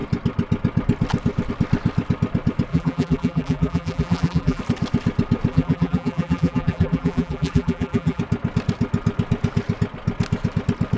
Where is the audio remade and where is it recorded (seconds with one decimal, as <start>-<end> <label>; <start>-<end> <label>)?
0.0-2.7 recorded; 2.7-4.6 remade; 4.6-5.5 recorded; 5.5-8.2 remade; 8.2-11.0 recorded